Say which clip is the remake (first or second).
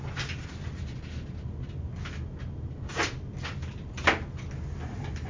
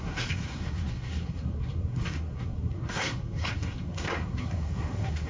second